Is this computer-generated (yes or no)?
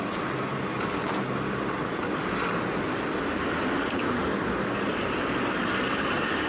no